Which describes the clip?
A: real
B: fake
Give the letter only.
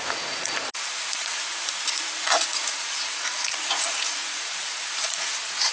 B